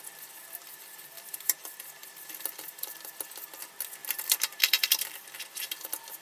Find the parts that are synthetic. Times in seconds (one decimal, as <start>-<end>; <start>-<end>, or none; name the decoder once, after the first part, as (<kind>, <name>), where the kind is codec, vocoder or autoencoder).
0.6-2.9 (vocoder, BigVGAN v2); 4.0-5.2